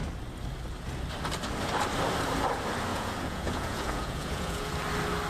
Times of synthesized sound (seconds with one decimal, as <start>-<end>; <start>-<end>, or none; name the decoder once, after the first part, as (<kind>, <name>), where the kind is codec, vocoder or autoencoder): 2.9-4.7 (vocoder, Vocos)